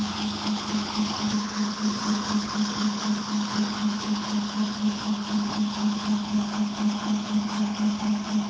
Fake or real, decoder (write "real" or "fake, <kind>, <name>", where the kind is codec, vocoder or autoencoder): fake, codec, HILCodec